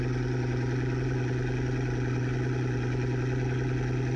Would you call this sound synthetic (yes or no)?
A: no